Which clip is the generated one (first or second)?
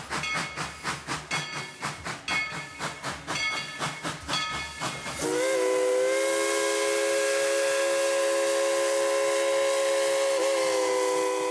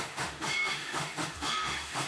second